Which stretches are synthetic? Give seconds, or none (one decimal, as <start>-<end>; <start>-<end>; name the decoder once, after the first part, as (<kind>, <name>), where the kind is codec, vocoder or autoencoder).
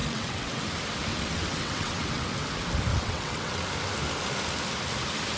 0.0-0.6 (vocoder, WaveNeXt); 1.1-2.3; 2.9-3.6